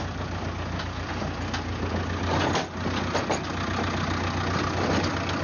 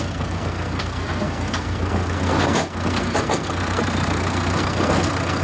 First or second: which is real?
first